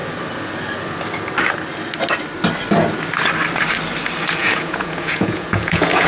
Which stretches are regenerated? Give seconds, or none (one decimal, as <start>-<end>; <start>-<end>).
4.4-6.1